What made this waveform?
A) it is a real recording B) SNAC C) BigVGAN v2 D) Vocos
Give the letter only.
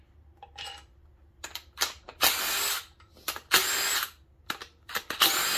A